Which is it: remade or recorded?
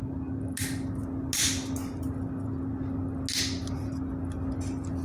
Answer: recorded